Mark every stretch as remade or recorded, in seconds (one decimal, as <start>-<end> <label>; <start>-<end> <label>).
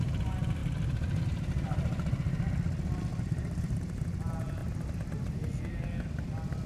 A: 0.0-3.1 recorded; 3.1-4.0 remade; 4.0-6.7 recorded